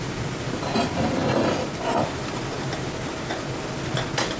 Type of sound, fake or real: real